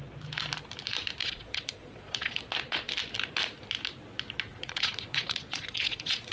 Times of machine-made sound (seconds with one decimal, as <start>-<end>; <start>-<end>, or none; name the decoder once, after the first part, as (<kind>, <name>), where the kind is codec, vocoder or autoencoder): 1.2-2.4 (vocoder, Vocos); 4.5-6.3